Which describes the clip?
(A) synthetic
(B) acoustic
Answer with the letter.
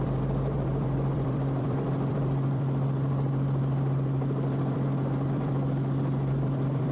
A